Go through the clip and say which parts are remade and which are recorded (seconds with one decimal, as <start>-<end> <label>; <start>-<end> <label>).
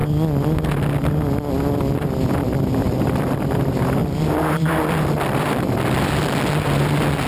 0.0-2.8 recorded; 2.8-3.5 remade; 3.5-4.0 recorded; 4.0-5.5 remade; 5.5-7.3 recorded